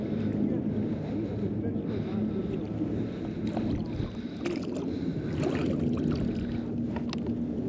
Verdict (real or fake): real